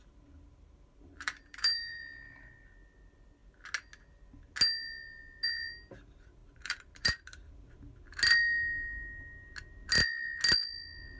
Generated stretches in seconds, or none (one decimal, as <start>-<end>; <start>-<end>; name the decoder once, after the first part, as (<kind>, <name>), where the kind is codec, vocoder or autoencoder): 1.1-2.0 (vocoder, BigVGAN v2); 6.4-7.5